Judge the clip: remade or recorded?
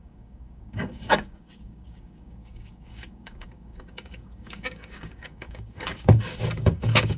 remade